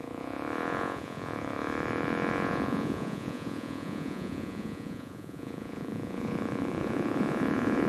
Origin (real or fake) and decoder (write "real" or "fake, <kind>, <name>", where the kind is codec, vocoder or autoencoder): fake, vocoder, Vocos